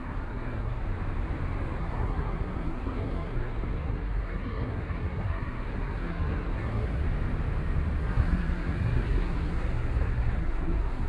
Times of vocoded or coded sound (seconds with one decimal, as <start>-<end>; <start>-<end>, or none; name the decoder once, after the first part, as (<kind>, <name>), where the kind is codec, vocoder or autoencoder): 0.0-0.8 (codec, SNAC); 1.8-7.0; 8.0-11.1